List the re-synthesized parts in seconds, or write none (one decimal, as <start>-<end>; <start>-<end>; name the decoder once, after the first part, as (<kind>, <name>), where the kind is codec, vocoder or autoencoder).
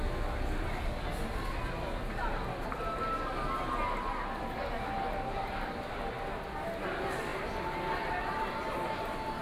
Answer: none